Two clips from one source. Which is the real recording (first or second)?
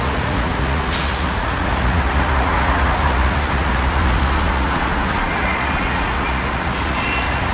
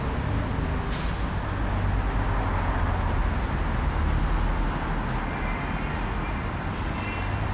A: second